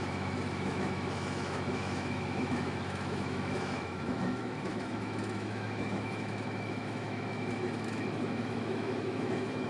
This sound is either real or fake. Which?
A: fake